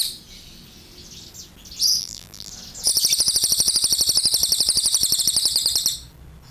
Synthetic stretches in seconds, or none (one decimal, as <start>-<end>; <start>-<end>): 2.0-2.5